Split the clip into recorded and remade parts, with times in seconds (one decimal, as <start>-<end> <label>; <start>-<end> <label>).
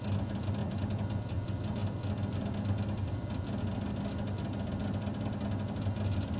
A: 0.0-6.4 recorded